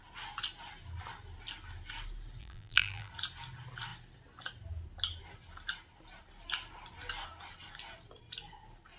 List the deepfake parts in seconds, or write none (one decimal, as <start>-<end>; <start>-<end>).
2.4-3.1